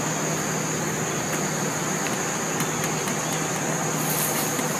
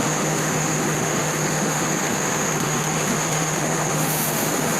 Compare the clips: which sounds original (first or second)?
first